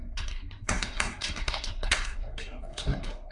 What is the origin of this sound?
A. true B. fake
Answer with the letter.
B